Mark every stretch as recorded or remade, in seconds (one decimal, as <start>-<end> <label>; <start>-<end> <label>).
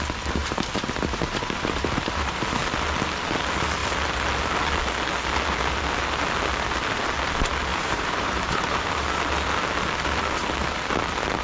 0.0-0.4 recorded; 0.4-2.6 remade; 2.6-7.7 recorded; 7.7-8.9 remade; 8.9-11.4 recorded